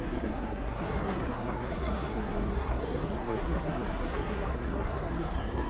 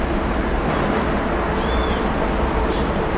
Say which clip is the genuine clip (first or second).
second